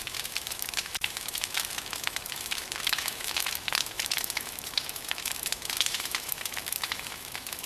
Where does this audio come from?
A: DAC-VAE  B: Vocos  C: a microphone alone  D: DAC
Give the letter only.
A